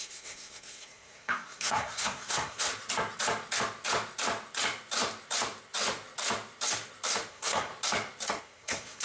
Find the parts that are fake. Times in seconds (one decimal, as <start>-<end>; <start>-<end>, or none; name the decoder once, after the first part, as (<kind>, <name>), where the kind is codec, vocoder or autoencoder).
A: 0.0-2.7 (codec, SNAC); 7.3-7.7; 8.4-9.0